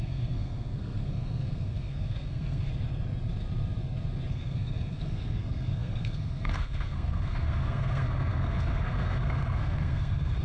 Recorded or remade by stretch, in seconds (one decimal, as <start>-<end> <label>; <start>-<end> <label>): 0.0-2.7 remade; 2.7-4.3 recorded; 4.3-10.4 remade